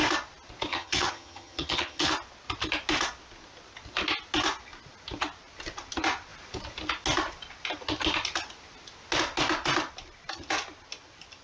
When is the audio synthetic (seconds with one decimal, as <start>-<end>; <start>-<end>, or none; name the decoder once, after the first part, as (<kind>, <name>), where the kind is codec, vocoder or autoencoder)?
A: 0.7-2.1 (vocoder, HiFi-GAN)